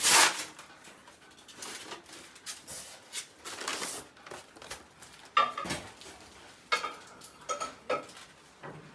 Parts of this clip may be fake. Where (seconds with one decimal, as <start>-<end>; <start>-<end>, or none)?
none